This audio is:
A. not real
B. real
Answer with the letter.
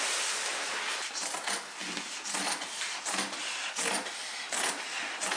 B